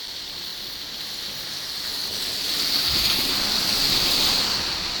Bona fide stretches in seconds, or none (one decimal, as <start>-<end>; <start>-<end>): 0.0-5.0